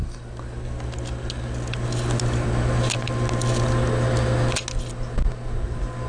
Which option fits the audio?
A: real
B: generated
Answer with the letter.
A